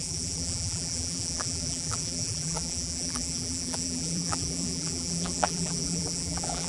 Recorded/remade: remade